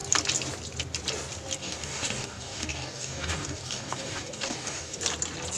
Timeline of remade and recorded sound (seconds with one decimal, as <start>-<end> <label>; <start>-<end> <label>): 0.0-1.6 recorded; 1.6-5.0 remade; 5.0-5.6 recorded